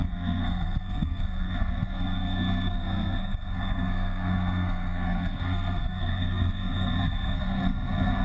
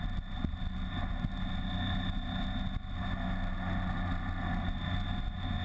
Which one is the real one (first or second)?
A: second